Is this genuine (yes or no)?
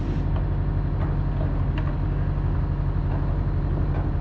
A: yes